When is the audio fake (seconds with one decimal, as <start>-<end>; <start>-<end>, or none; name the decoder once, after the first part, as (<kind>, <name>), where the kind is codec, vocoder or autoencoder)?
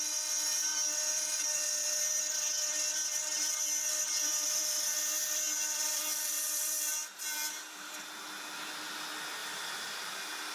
0.7-2.2 (vocoder, BigVGAN v2); 2.9-7.9; 9.4-9.9